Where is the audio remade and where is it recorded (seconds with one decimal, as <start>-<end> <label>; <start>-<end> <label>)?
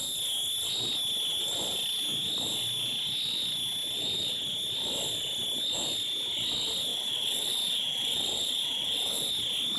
0.0-6.9 recorded; 6.9-9.3 remade; 9.3-9.8 recorded